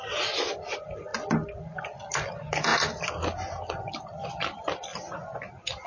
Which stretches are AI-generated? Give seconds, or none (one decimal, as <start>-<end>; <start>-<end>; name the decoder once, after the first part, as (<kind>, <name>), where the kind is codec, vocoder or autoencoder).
0.0-1.1 (vocoder, BigVGAN v2); 1.6-2.7; 4.3-4.9